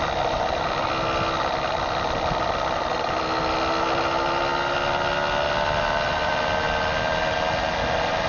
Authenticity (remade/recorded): recorded